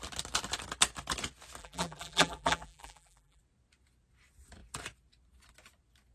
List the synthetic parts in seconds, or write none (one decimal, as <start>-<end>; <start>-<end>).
1.6-3.4